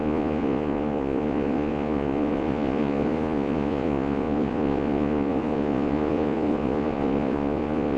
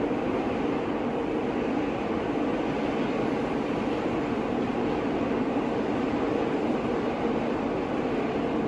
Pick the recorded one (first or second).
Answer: second